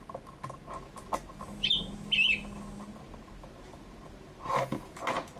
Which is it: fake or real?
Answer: real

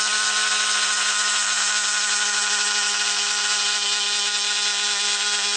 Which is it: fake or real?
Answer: real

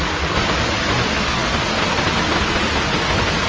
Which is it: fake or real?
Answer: real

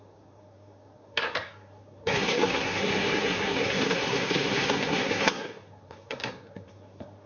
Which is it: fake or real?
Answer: fake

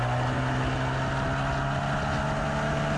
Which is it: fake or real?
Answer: real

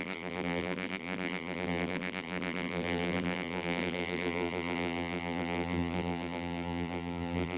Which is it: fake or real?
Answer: fake